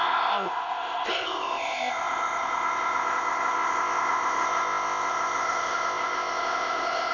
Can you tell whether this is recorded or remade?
remade